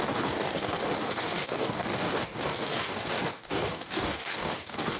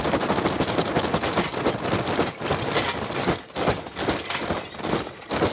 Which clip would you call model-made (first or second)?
first